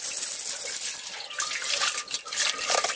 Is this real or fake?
real